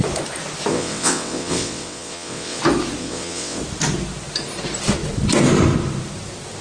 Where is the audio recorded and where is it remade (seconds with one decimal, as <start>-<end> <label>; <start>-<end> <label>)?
0.0-0.7 recorded; 0.7-2.6 remade; 2.6-3.0 recorded; 3.0-3.6 remade; 3.6-6.6 recorded